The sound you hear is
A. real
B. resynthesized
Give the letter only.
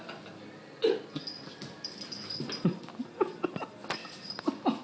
A